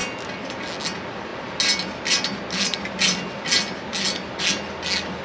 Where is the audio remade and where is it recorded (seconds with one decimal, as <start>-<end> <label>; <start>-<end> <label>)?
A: 0.0-5.2 recorded